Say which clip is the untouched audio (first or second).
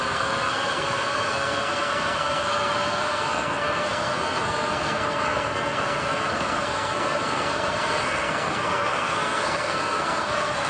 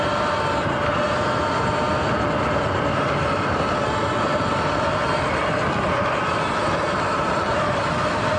second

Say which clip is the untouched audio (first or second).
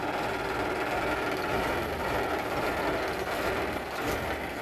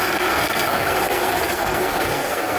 first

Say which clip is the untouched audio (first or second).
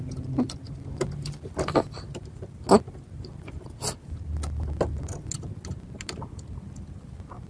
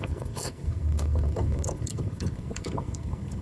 first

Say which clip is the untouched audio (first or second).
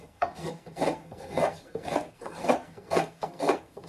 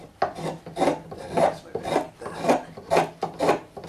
second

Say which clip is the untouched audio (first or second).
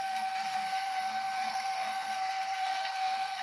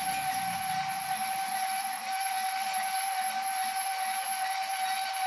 second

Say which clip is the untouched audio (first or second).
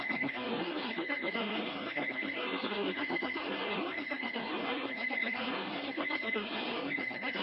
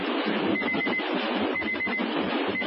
second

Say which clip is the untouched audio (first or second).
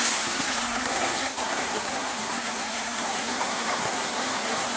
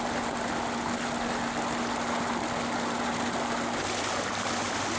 second